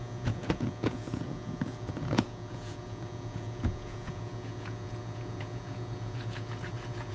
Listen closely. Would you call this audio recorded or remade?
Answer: remade